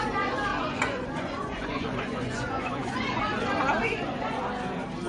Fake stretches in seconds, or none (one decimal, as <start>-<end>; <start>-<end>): 0.5-3.2; 3.8-4.4